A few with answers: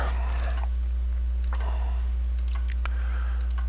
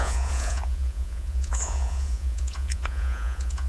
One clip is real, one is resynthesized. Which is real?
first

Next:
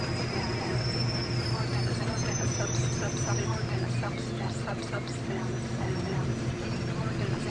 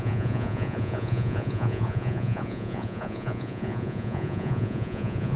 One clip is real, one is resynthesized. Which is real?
first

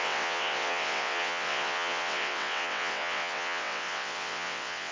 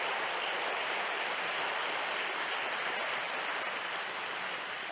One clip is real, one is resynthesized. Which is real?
second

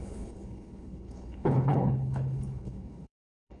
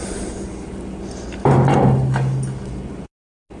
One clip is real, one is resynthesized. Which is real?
second